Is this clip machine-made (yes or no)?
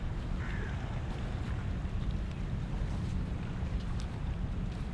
yes